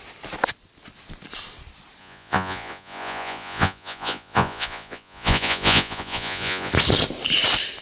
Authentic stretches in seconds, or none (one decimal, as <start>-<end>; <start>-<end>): 0.0-2.0; 6.7-7.8